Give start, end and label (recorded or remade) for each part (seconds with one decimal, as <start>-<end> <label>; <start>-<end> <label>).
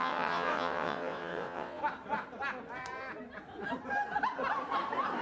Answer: 0.0-1.8 remade; 1.8-5.2 recorded